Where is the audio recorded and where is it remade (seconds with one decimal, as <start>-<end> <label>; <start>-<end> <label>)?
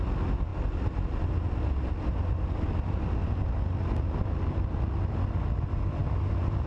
0.0-6.7 recorded